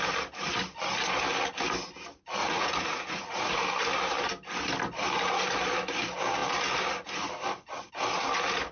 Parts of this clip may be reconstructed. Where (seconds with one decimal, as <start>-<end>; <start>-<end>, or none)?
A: 2.4-3.6